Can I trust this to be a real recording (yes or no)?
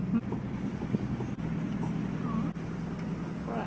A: yes